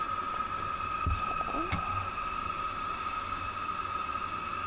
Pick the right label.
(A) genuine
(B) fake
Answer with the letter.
A